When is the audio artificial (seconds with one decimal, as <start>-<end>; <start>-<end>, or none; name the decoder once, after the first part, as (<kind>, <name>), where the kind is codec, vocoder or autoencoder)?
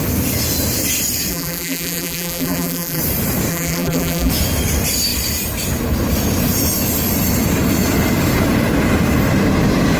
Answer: 1.3-3.0 (vocoder, BigVGAN v2); 3.5-4.3